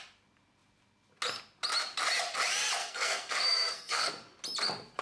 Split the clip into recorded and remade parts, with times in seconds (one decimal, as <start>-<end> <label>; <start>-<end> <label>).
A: 0.0-2.8 recorded; 2.8-4.1 remade; 4.1-5.0 recorded